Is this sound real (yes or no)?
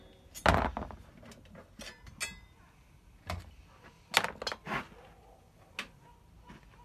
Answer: yes